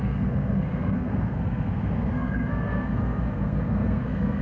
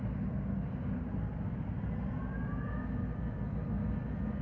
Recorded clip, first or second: second